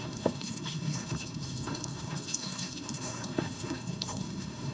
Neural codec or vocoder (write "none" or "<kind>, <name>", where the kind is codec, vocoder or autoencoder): codec, SNAC